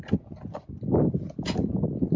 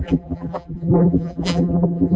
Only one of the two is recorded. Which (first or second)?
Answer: first